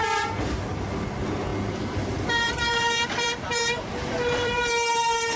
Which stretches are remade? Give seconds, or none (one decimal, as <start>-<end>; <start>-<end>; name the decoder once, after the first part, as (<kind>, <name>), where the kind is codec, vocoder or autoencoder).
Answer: 1.5-4.7 (vocoder, BigVGAN v2)